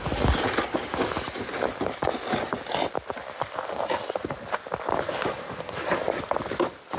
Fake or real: real